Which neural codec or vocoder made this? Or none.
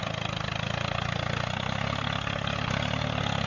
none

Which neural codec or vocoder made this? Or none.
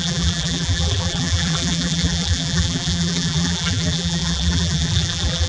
vocoder, BigVGAN v2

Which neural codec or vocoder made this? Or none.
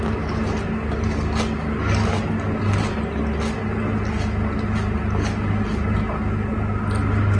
none